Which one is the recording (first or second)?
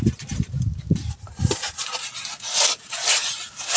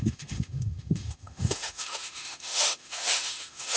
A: first